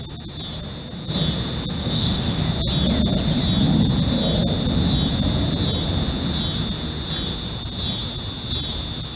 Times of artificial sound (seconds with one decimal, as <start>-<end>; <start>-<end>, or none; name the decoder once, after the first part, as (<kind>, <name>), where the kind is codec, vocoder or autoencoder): 1.8-2.4 (autoencoder, DAC-VAE)